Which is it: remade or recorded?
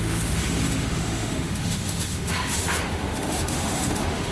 remade